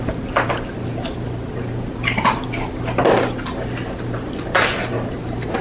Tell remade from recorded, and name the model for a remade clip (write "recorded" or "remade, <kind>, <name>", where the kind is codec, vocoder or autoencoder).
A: recorded